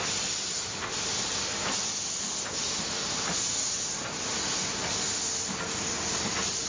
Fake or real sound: real